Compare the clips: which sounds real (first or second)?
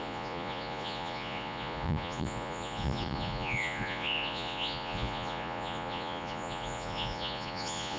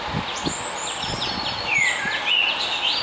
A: second